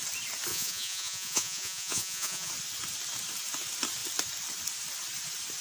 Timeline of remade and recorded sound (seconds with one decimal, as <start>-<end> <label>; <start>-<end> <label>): 0.0-0.5 recorded; 0.5-2.5 remade; 2.5-5.6 recorded